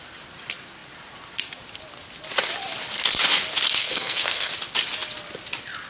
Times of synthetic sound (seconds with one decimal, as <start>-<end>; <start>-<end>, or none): 3.8-4.5